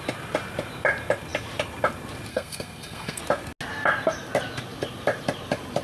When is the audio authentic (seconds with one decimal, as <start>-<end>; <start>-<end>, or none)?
0.0-2.3; 3.2-5.8